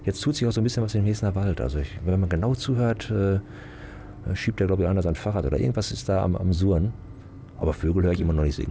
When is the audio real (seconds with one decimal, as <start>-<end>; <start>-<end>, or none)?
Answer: 0.0-8.7